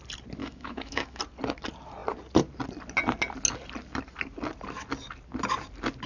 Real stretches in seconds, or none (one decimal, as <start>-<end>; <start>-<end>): 0.0-0.4; 1.2-6.1